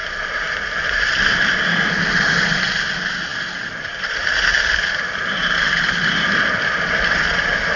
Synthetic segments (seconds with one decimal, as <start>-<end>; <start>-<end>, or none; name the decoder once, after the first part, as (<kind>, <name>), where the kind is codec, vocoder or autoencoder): none